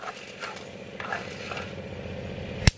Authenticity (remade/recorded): recorded